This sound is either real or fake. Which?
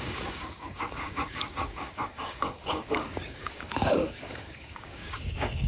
fake